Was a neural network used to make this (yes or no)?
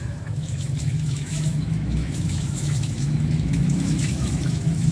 yes